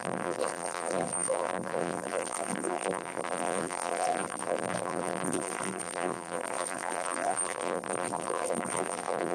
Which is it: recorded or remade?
remade